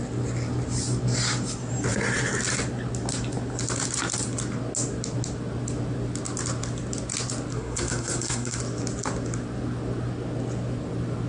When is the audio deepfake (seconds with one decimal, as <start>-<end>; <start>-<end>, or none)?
7.5-8.6